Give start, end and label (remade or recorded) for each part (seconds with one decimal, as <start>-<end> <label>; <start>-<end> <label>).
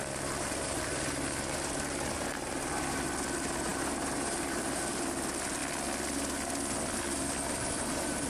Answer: 0.0-5.6 remade; 5.6-7.5 recorded; 7.5-8.3 remade